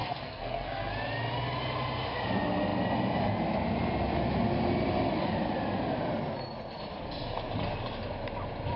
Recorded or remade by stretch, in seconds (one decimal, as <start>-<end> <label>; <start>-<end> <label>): 0.0-0.9 remade; 0.9-8.8 recorded